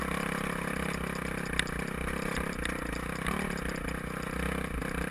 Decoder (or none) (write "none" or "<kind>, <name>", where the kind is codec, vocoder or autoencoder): none